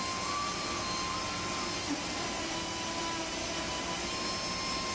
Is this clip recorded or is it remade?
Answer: recorded